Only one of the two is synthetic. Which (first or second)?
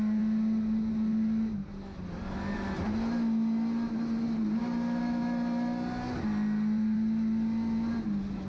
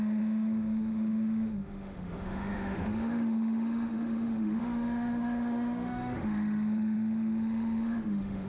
second